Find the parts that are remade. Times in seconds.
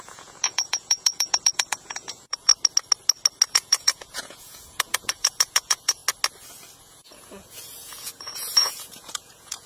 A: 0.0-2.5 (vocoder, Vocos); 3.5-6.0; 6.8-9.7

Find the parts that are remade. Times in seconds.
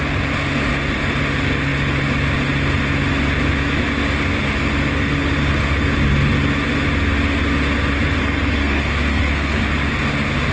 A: 8.2-9.6 (codec, SNAC)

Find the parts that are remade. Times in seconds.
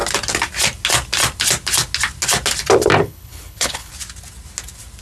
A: 3.0-3.9 (codec, HILCodec)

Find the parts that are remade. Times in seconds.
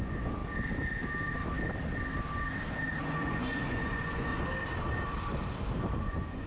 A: 0.0-0.4 (vocoder, Vocos); 3.0-4.3; 6.0-6.5